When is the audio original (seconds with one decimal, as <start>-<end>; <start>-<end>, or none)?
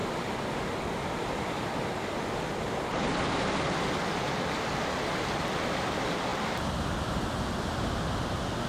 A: 0.0-4.9; 6.3-8.7